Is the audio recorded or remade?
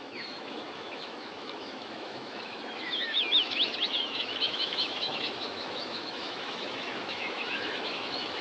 remade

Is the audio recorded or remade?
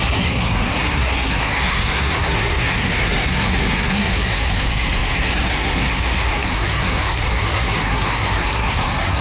remade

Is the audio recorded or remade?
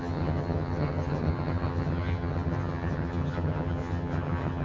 remade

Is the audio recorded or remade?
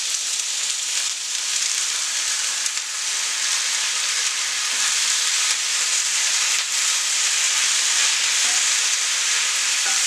remade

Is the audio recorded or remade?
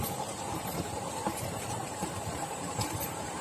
remade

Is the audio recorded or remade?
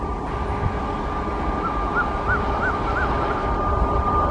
recorded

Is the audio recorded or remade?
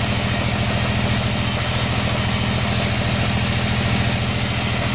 recorded